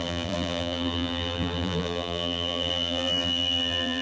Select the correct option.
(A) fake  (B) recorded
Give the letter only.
A